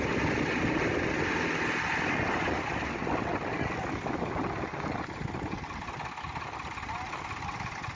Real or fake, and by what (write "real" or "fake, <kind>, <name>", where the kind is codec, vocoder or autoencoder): real